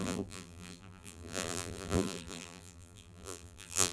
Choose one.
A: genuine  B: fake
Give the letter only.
B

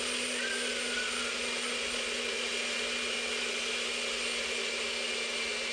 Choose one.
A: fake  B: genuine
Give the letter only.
B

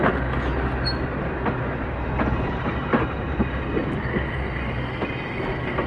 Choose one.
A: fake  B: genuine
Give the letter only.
B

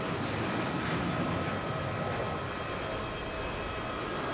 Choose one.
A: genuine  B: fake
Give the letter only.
A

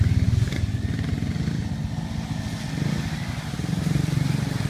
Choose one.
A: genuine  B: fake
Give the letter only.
A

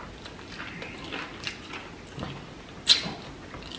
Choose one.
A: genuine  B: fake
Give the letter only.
A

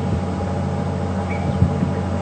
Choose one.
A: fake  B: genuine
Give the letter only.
B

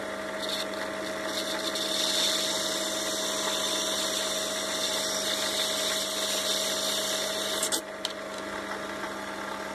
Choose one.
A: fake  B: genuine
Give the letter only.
B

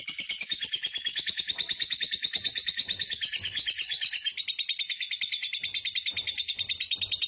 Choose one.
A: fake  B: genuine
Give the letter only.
B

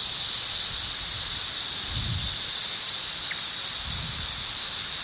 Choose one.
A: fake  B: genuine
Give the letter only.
B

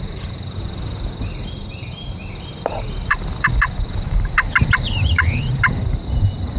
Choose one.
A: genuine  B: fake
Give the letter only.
B